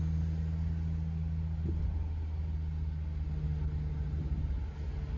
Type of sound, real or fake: real